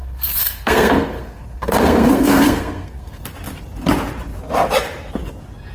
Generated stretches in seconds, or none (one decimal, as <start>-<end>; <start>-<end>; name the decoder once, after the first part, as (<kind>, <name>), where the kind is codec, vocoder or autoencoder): 0.0-3.2 (codec, SNAC)